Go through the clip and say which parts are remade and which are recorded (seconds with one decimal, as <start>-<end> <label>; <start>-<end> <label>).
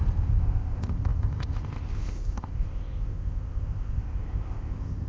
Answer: 0.0-5.1 remade